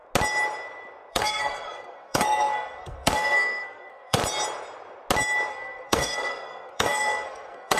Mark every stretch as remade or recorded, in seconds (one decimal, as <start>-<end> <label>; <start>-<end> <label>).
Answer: 0.0-1.1 recorded; 1.1-4.2 remade; 4.2-5.5 recorded; 5.5-7.8 remade